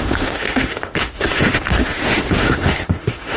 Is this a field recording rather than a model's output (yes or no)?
no